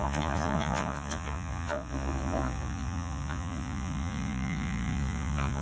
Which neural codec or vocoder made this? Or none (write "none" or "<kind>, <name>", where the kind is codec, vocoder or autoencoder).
vocoder, Vocos